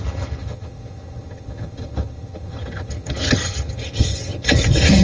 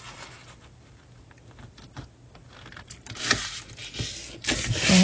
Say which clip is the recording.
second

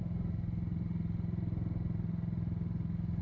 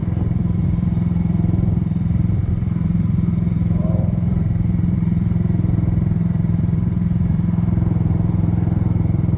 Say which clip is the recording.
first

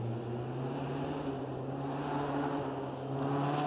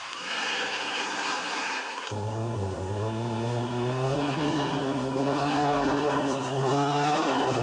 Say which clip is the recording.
first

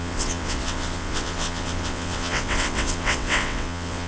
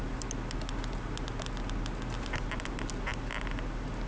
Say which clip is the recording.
second